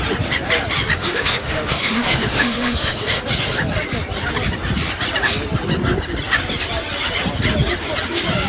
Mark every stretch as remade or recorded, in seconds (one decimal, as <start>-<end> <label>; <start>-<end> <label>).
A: 0.0-1.0 recorded; 1.0-3.2 remade; 3.2-8.5 recorded